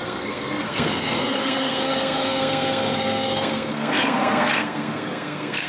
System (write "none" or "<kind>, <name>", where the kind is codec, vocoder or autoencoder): codec, SNAC